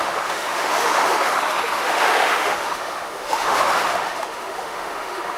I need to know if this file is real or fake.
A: fake